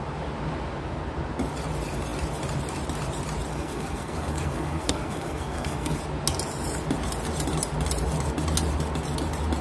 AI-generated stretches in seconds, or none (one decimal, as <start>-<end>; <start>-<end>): 3.5-6.0